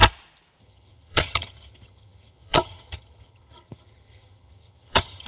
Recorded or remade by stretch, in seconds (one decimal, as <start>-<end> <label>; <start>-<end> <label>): 0.0-0.6 recorded; 0.6-5.3 remade